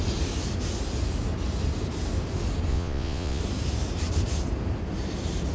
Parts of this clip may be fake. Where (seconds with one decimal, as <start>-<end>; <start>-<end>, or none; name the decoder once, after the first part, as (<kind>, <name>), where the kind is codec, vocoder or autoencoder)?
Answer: 2.7-3.4 (vocoder, Vocos)